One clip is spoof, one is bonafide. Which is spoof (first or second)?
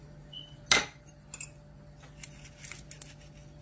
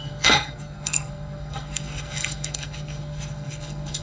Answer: second